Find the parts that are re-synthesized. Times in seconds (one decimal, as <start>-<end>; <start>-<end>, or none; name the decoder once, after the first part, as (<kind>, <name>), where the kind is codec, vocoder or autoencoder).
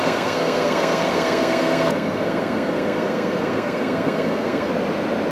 0.0-4.7 (codec, SNAC)